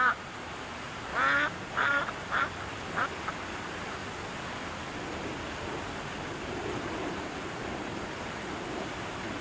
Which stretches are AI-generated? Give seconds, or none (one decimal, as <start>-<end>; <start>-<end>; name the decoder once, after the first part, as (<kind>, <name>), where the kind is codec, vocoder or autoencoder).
0.0-1.1 (vocoder, BigVGAN v2); 1.7-4.0; 5.6-9.4